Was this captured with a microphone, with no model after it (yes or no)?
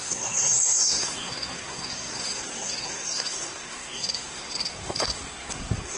no